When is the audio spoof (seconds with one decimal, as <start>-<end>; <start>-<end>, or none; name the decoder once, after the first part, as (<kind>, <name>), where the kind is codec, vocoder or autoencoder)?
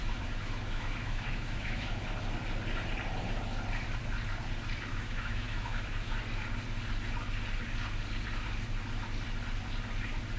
0.0-2.1 (autoencoder, DAC-VAE); 4.9-6.2